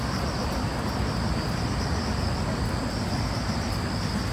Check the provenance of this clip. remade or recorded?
recorded